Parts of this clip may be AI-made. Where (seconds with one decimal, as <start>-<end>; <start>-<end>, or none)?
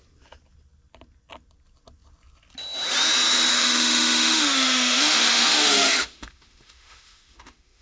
3.5-7.8